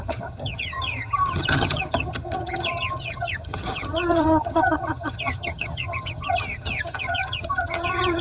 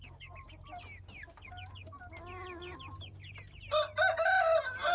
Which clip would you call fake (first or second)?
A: first